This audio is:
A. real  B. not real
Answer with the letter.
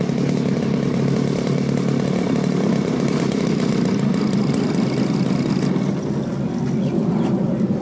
A